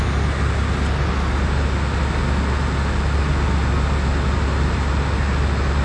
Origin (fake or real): real